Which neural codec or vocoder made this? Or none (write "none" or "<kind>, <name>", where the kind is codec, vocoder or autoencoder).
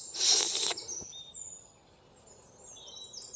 none